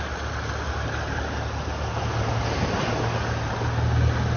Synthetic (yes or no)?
no